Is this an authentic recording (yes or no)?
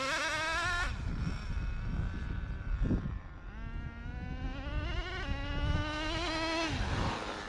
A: yes